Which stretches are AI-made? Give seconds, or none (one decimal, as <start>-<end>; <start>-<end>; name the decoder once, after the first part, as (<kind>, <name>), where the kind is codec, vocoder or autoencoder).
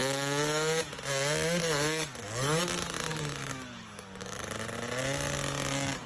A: 0.0-0.8 (codec, DAC); 1.6-2.6; 3.1-4.5